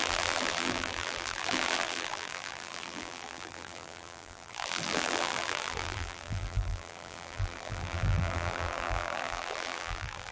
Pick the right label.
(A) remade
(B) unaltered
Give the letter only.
A